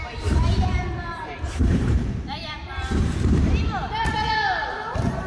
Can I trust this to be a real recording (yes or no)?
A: no